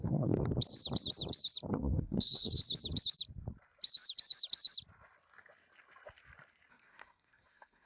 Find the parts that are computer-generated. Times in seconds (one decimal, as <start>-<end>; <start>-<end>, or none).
0.0-0.5; 1.7-2.6; 6.7-7.9